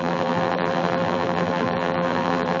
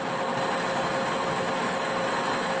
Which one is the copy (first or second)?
first